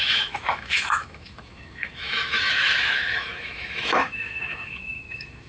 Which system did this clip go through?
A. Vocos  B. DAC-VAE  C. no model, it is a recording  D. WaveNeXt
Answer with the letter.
B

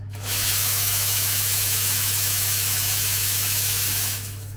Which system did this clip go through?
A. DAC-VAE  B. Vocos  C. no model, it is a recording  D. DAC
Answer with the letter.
A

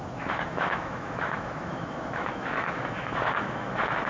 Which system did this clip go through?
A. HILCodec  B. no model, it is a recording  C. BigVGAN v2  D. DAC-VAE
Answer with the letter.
D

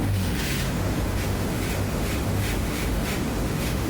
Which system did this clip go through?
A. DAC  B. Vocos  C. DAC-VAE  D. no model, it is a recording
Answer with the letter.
C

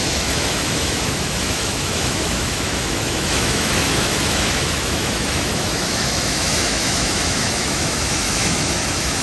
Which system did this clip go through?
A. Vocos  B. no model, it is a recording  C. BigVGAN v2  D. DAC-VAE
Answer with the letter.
D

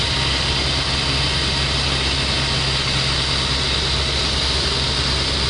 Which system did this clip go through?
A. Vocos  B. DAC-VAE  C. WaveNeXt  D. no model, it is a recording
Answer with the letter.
D